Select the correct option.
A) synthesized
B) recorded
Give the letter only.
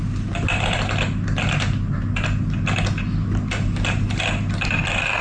B